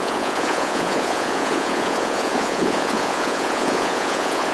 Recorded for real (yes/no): no